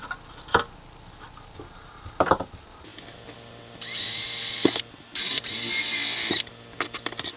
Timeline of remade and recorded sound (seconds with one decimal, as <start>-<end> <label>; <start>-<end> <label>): 0.0-7.4 recorded